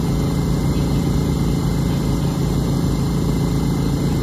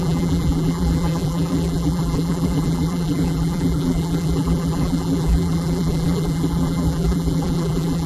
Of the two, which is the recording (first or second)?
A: first